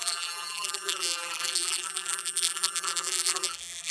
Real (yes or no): no